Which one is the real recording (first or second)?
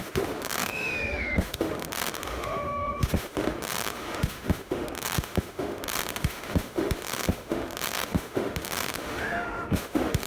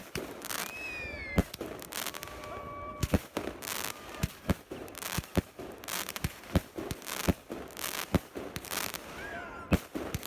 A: second